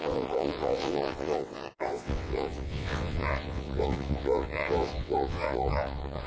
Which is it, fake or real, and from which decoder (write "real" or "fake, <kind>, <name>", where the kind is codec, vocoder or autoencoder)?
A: fake, vocoder, WaveNeXt